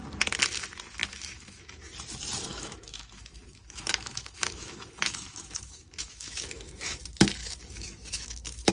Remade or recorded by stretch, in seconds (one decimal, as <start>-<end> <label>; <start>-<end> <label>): 0.0-1.0 recorded; 1.0-1.8 remade; 1.8-2.5 recorded; 2.5-7.0 remade; 7.0-7.4 recorded; 7.4-8.7 remade